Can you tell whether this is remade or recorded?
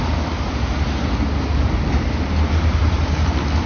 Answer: recorded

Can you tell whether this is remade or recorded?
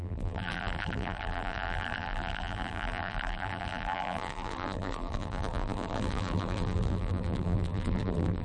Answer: remade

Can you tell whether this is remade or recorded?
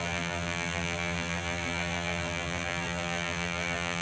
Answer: remade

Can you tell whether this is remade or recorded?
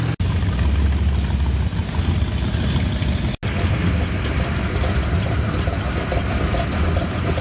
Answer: recorded